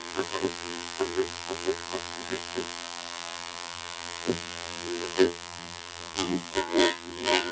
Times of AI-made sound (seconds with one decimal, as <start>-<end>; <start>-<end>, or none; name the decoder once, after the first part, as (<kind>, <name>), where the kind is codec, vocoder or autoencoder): 0.0-7.5 (vocoder, BigVGAN v2)